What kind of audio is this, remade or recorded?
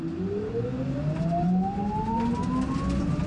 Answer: recorded